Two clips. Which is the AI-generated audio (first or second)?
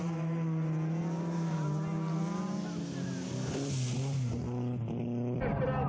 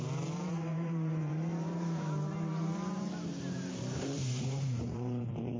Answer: second